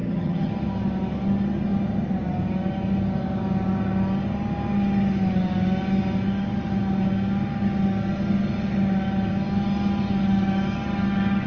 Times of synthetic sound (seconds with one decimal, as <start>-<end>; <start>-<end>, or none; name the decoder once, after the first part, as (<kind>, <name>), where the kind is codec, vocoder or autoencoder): 0.0-0.5 (vocoder, HiFi-GAN)